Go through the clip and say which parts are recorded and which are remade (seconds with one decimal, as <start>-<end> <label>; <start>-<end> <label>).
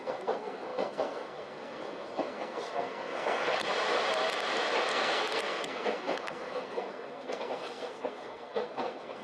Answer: 0.0-3.6 remade; 3.6-4.8 recorded; 4.8-9.2 remade